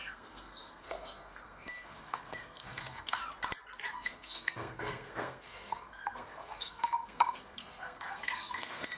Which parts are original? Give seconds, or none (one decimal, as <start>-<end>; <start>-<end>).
3.2-3.9